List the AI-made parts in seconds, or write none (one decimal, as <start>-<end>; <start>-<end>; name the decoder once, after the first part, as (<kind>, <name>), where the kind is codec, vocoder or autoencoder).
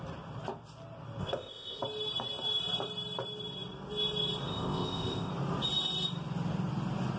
1.2-1.8 (codec, ZipCodec); 4.5-5.3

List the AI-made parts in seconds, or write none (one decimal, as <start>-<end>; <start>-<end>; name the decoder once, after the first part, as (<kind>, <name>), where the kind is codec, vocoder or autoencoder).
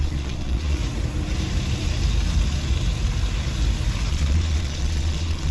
0.0-0.8 (vocoder, Vocos); 4.1-5.5